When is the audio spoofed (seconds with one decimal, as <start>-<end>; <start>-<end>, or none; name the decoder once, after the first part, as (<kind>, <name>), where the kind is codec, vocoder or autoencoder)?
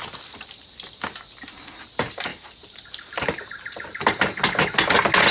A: 2.3-4.2 (vocoder, BigVGAN v2)